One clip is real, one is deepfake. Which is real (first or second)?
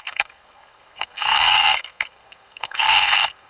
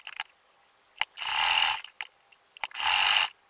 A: second